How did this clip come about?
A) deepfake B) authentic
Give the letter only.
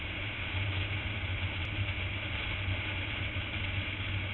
B